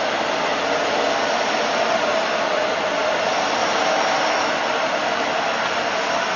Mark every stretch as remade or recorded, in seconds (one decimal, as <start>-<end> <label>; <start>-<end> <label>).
0.0-6.4 recorded